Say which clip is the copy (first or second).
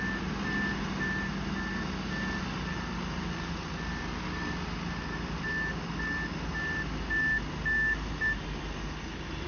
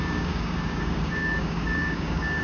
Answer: second